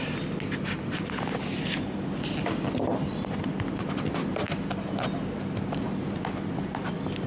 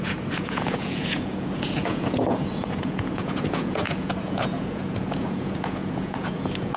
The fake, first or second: second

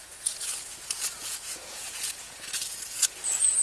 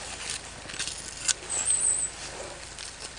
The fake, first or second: first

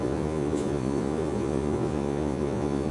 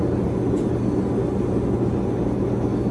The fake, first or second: first